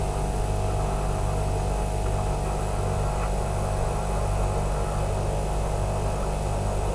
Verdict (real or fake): real